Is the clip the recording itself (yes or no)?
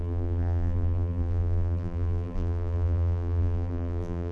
no